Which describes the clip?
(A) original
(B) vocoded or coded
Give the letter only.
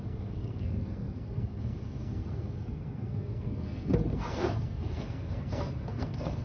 B